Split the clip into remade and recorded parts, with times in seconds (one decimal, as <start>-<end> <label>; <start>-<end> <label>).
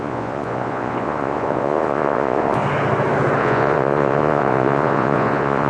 0.0-2.6 remade; 2.6-3.4 recorded; 3.4-5.7 remade